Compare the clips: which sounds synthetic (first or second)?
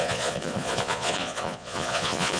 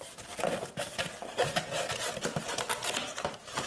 first